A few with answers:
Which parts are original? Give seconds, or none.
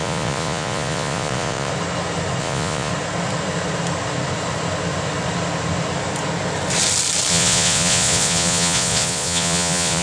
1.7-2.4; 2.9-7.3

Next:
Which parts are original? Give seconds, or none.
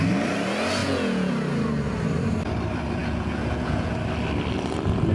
0.0-0.8; 1.3-3.0; 3.9-5.1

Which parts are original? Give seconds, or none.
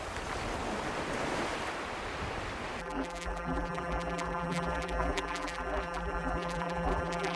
0.0-2.8